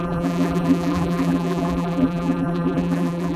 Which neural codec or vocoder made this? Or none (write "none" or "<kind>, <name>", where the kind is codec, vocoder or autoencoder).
vocoder, BigVGAN v2